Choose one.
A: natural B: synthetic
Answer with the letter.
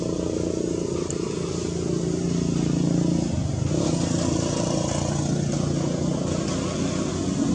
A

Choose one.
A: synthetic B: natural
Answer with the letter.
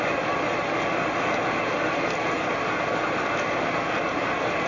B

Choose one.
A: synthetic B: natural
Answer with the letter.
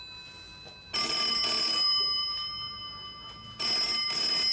B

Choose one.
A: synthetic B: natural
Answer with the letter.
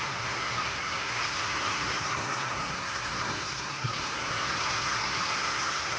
A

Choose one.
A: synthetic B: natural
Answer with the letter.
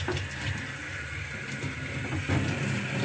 B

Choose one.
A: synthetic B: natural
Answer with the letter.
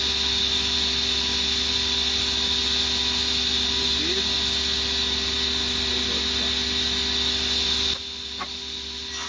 B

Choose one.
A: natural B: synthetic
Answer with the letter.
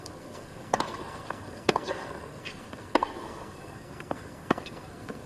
B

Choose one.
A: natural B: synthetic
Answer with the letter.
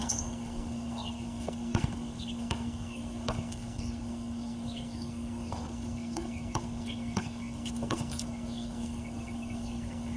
B